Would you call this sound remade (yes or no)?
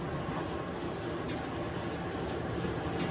no